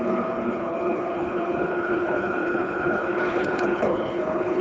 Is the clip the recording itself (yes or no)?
no